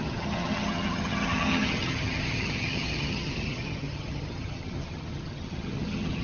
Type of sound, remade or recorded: remade